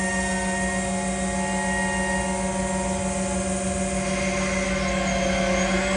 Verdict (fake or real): real